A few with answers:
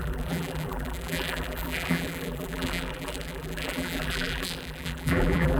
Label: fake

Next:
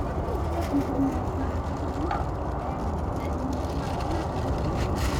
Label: real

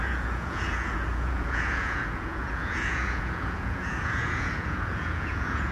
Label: fake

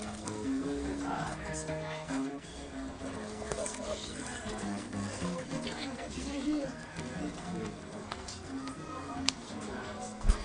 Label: fake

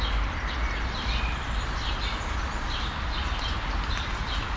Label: real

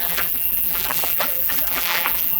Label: fake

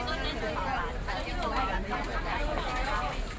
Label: real